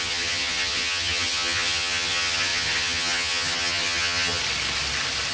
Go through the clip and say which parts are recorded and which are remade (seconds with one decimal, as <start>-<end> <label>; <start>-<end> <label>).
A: 0.0-4.4 remade; 4.4-5.3 recorded